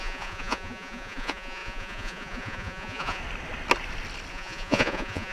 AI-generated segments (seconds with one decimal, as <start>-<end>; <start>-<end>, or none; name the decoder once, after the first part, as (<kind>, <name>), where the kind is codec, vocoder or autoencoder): 0.0-3.2 (vocoder, Vocos); 4.3-5.3